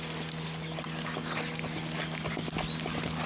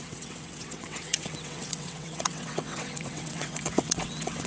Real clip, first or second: first